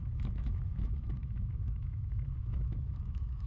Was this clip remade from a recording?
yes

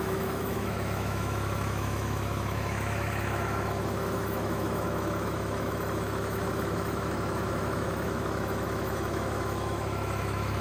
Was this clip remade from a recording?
yes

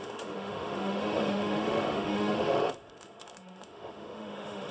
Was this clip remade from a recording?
yes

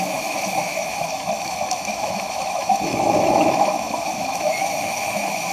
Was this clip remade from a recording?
yes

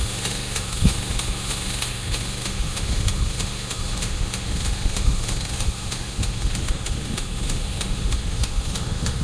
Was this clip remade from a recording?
yes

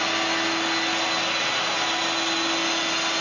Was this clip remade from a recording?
no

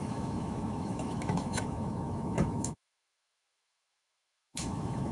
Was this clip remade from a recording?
yes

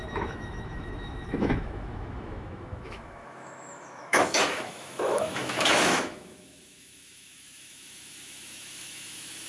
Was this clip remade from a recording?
yes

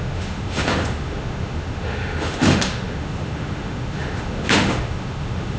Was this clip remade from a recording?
yes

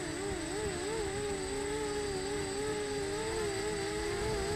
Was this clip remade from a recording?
no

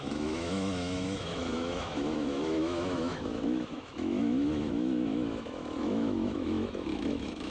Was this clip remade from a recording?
yes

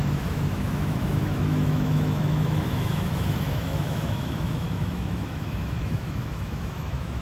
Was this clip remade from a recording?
yes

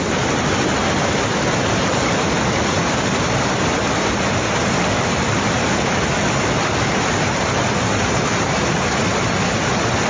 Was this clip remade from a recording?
no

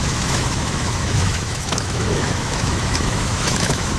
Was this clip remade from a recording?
yes